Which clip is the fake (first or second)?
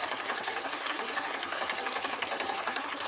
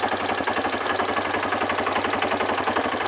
first